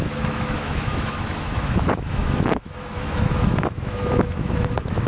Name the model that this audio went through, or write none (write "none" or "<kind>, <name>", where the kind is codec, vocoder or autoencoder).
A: autoencoder, DAC-VAE